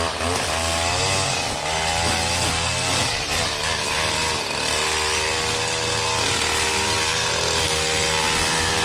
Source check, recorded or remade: recorded